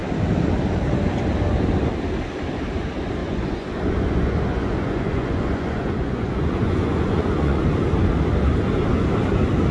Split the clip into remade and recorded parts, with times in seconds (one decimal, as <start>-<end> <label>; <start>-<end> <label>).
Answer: 0.0-3.2 recorded; 3.2-7.6 remade; 7.6-9.7 recorded